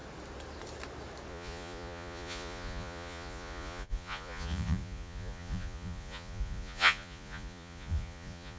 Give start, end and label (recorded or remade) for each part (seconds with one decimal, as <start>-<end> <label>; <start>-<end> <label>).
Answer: 0.0-1.3 recorded; 1.3-8.6 remade